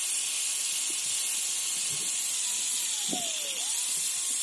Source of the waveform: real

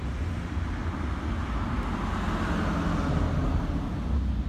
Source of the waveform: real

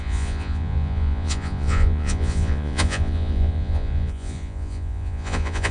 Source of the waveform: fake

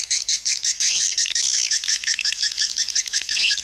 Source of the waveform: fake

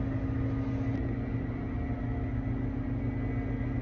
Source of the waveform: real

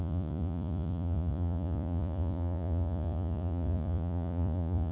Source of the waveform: fake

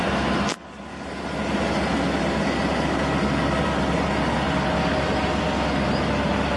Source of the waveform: real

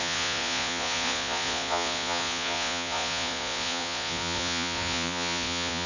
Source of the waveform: fake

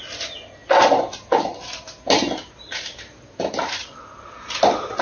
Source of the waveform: real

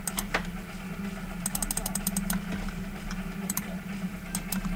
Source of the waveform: real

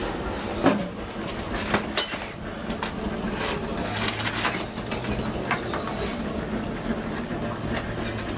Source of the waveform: real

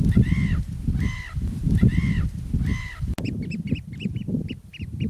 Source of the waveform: real